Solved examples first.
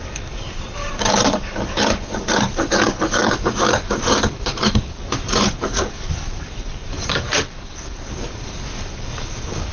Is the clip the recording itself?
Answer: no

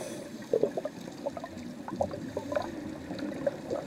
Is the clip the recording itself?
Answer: yes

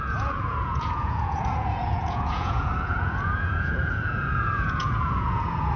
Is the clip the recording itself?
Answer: no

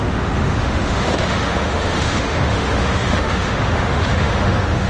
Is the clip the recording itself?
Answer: no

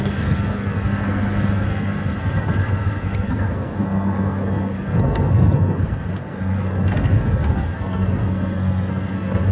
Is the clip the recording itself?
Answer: no